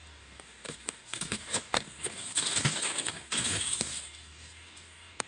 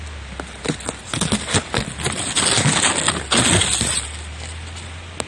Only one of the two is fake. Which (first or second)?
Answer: first